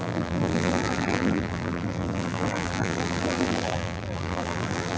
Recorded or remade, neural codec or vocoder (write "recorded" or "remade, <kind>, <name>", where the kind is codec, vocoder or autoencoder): remade, vocoder, BigVGAN v2